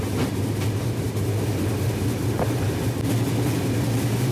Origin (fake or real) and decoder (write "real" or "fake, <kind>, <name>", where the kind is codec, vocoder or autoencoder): real